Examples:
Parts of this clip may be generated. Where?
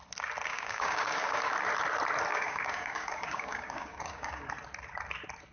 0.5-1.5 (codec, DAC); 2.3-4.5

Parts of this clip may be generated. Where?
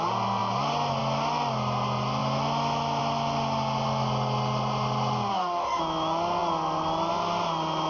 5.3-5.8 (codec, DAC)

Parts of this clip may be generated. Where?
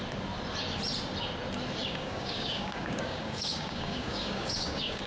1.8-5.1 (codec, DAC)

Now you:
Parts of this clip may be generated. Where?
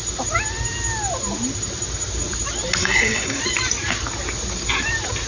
2.8-3.4 (codec, DAC)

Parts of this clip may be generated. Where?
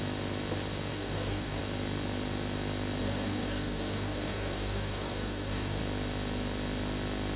0.9-1.6 (codec, DAC); 3.0-5.8